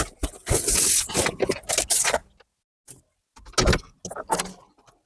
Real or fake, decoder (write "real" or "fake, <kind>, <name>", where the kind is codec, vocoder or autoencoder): real